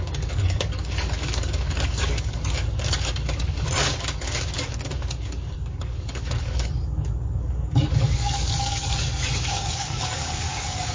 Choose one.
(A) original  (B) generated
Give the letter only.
B